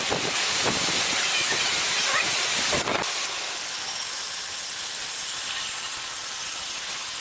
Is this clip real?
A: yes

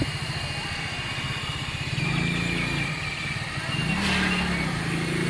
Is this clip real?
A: yes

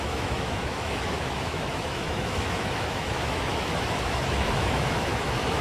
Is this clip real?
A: no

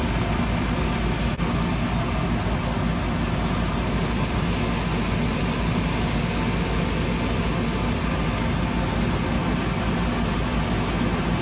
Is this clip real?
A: yes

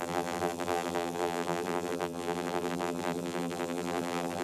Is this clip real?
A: no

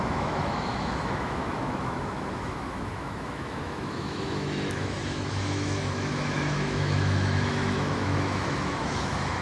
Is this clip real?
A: no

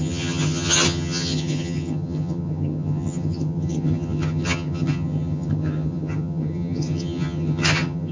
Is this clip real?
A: no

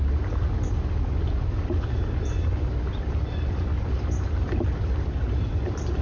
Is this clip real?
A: yes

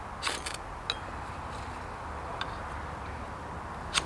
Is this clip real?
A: yes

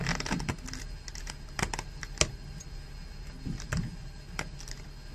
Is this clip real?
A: yes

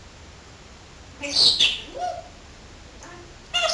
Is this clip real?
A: yes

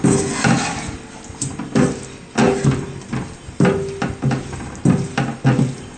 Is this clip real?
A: yes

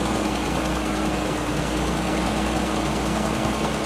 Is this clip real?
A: no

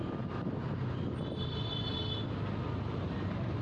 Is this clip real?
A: yes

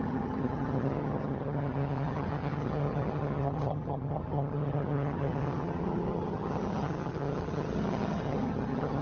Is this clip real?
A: no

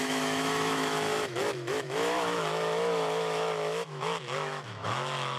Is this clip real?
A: no